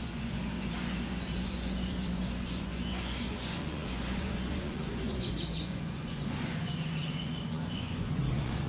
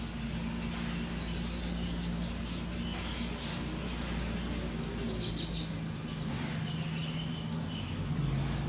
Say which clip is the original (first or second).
second